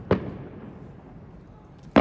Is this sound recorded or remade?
recorded